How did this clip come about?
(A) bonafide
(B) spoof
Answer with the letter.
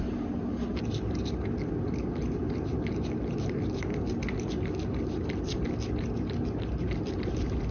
A